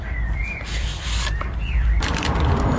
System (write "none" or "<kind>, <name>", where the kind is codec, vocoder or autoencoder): vocoder, BigVGAN v2